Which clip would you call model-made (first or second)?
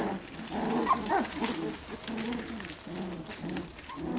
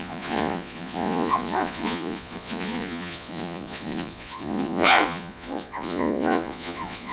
second